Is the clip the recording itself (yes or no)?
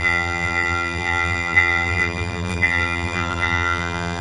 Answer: no